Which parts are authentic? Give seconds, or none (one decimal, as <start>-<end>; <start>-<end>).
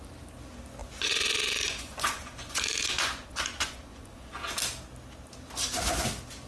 0.0-0.8; 4.3-6.5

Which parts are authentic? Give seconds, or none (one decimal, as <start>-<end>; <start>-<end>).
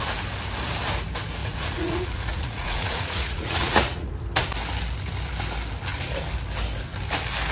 0.0-1.4; 4.1-7.5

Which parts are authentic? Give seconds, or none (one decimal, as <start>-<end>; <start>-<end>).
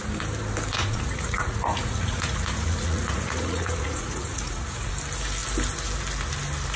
0.0-0.8; 4.9-6.8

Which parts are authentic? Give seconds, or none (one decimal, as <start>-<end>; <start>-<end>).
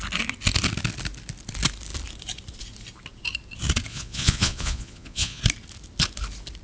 0.0-3.9; 5.4-6.6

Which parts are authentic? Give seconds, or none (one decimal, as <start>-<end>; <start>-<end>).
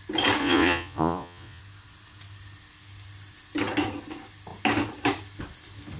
0.0-0.4; 1.6-6.0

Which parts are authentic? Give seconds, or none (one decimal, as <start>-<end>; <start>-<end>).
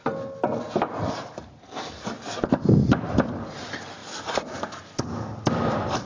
0.0-6.1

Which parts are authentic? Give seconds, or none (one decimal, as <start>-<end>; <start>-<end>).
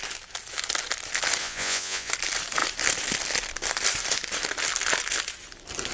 0.0-1.4; 2.1-5.9